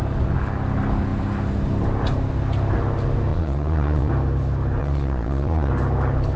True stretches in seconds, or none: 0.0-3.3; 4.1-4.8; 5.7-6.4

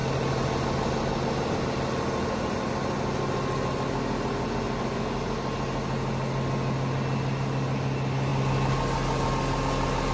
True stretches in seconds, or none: 0.0-10.1

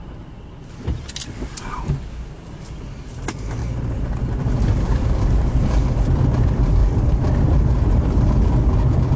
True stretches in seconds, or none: 0.0-9.2

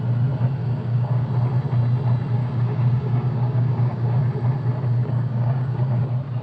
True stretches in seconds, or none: 0.0-0.6; 1.3-2.4; 4.2-5.0; 6.0-6.4

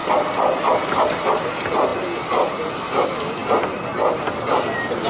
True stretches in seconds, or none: 0.0-5.1

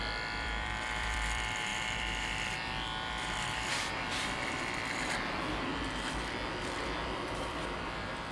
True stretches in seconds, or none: 5.7-6.6

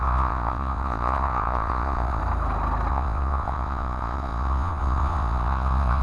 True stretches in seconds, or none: 2.2-2.9

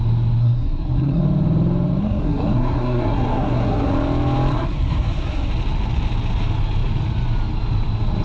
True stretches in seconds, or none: 0.0-0.4; 1.2-2.0; 3.9-4.5; 5.5-8.2